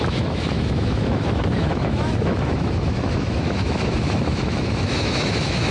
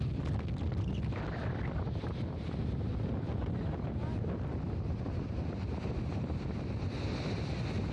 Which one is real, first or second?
second